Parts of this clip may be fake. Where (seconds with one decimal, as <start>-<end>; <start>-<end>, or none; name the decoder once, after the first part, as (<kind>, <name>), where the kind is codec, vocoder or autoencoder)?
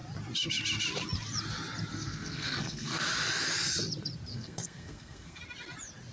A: 1.9-3.0 (codec, SNAC); 4.3-5.4